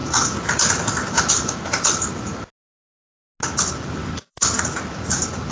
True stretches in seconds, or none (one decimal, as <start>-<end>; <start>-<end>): 0.0-4.0; 4.6-5.5